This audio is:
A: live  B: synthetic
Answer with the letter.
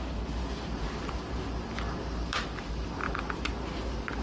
A